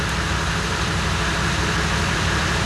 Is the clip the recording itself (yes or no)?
yes